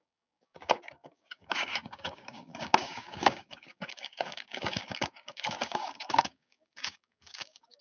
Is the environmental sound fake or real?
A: fake